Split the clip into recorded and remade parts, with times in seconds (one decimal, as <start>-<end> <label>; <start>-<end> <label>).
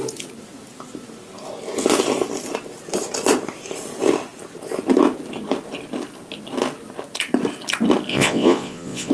0.0-8.1 recorded; 8.1-9.1 remade